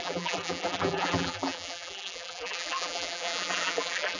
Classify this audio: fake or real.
fake